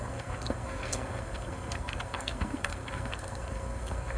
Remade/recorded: remade